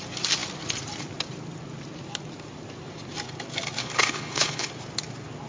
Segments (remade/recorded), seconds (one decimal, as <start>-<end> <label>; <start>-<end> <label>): 0.0-3.8 recorded; 3.8-4.7 remade; 4.7-5.5 recorded